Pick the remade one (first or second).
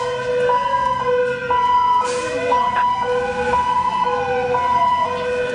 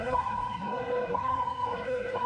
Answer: second